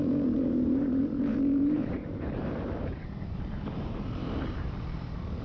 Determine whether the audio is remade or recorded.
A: remade